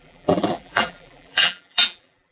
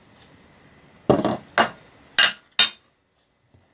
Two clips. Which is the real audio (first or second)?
second